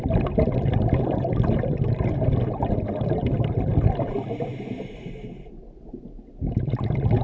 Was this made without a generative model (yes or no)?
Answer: yes